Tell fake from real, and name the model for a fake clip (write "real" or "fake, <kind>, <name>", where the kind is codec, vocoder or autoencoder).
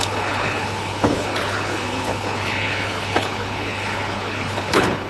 fake, codec, HILCodec